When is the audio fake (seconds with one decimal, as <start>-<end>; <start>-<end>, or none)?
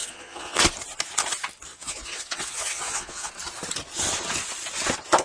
0.0-0.6; 1.7-3.3